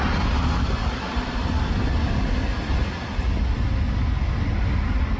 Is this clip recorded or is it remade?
recorded